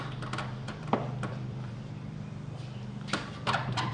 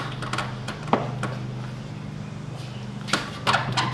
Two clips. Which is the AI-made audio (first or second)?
first